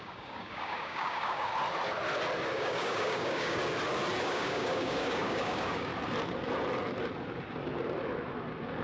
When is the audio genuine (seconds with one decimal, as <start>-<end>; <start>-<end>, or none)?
1.5-2.5; 3.6-4.2; 5.9-8.8